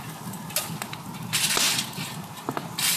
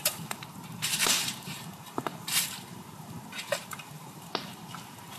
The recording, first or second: first